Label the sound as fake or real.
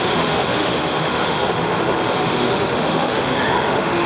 fake